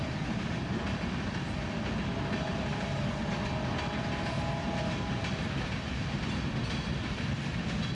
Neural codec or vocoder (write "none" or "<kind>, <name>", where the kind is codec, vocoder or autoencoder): none